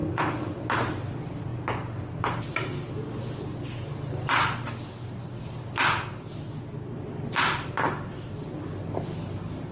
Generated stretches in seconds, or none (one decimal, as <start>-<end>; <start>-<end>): none